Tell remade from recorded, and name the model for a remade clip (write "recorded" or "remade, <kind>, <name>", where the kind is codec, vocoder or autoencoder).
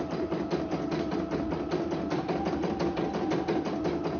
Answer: recorded